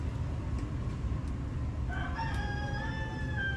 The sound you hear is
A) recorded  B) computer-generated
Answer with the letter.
A